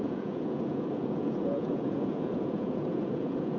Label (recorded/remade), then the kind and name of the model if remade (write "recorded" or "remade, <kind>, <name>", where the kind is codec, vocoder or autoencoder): remade, vocoder, Vocos